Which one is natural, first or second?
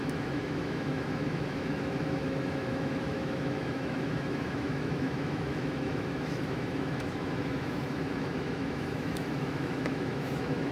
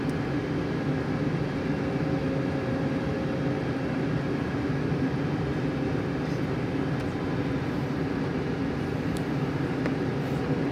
second